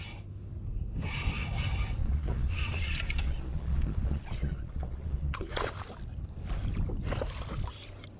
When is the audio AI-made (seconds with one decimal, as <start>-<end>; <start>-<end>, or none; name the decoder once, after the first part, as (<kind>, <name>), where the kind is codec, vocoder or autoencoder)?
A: 2.0-5.7 (vocoder, Vocos)